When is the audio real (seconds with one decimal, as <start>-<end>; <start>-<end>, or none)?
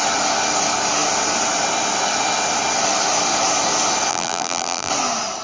0.0-4.1; 4.9-5.4